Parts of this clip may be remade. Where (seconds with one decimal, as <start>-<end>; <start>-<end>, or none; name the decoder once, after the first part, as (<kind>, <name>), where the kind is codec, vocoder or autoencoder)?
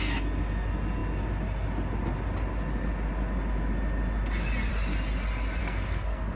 5.6-6.4 (codec, SNAC)